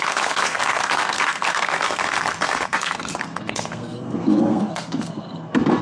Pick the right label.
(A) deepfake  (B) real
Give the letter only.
A